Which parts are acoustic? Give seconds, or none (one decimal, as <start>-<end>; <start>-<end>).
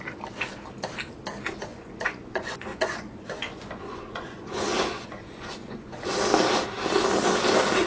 0.0-1.7; 6.1-7.9